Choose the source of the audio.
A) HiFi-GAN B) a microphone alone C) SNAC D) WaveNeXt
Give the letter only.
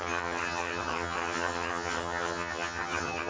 A